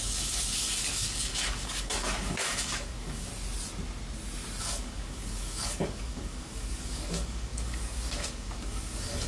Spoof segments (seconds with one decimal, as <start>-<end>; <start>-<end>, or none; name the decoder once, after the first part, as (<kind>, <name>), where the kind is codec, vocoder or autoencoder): 0.0-3.3 (codec, DAC); 4.6-9.3